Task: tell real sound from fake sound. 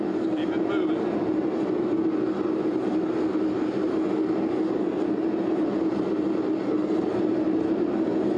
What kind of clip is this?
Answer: real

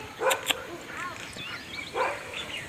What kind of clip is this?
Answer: real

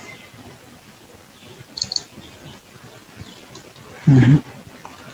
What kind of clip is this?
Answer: real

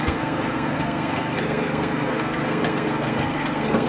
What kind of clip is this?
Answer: fake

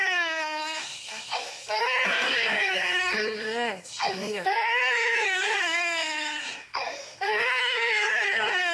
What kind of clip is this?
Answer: fake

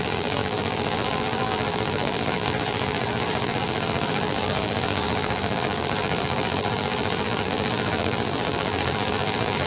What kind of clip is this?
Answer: fake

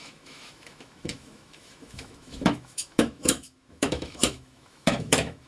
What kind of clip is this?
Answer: fake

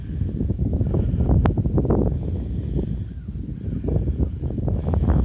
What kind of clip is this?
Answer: real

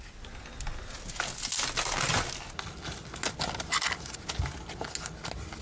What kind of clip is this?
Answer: real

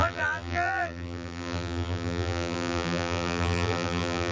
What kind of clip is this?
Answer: fake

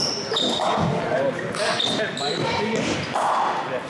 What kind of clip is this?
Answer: real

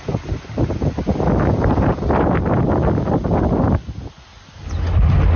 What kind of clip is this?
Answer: real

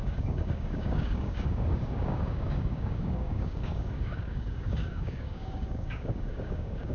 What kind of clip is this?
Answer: fake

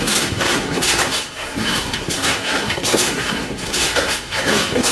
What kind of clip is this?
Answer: fake